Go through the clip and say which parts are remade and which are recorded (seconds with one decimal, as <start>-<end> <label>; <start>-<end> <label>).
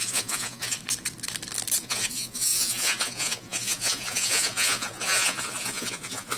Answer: 0.0-0.8 remade; 0.8-1.8 recorded; 1.8-6.4 remade